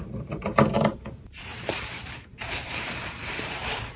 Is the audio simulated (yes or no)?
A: yes